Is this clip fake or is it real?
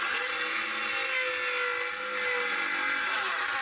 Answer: real